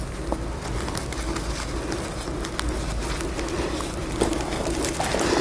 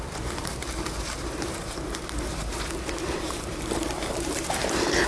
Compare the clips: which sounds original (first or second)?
first